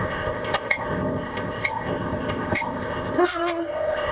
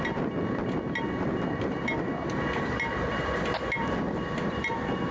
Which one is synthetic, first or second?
first